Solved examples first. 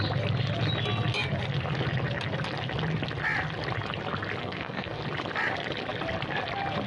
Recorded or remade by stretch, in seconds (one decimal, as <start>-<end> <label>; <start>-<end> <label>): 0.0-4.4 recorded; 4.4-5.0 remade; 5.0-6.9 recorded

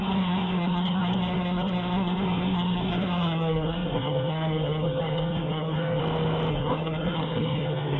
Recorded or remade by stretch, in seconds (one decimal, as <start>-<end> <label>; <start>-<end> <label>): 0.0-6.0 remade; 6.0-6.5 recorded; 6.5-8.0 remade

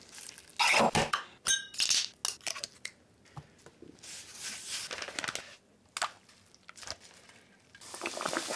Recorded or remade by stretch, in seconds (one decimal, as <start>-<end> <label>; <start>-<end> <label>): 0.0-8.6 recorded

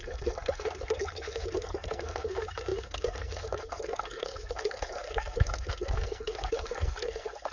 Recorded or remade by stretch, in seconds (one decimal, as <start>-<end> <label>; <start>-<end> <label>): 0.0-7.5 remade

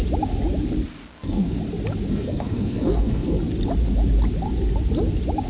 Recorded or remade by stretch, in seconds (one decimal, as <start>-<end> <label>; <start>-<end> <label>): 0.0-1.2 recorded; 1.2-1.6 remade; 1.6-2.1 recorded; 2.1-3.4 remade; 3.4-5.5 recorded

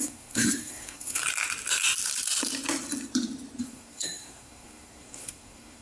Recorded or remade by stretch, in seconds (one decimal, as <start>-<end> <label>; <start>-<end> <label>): 0.0-1.2 remade; 1.2-3.6 recorded; 3.6-5.8 remade